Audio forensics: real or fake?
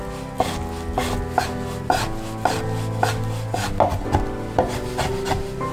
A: real